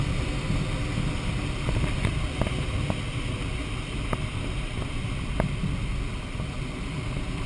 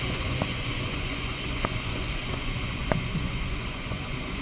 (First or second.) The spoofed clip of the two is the second